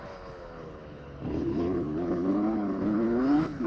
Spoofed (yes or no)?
yes